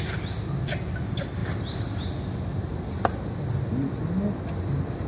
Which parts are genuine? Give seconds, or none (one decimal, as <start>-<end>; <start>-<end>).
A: 0.0-5.1